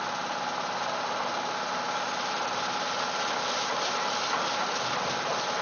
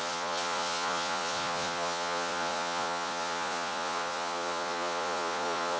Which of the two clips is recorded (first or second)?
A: first